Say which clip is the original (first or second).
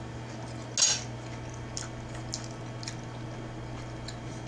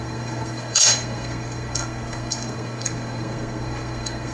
first